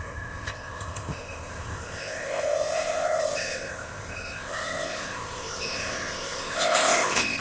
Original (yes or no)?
no